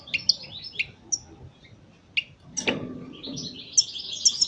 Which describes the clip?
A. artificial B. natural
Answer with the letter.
B